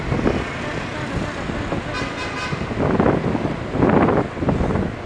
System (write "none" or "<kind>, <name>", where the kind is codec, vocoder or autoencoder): none